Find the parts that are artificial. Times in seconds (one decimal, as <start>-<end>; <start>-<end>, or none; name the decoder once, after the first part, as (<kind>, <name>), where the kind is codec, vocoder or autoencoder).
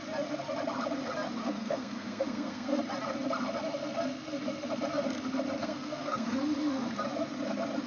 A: 1.4-2.8 (codec, SNAC); 5.6-6.4